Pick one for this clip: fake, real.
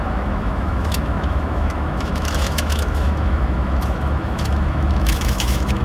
fake